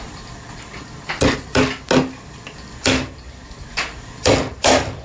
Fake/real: real